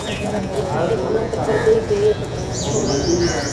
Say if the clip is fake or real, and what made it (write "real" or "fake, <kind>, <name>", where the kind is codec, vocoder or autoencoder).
fake, vocoder, Vocos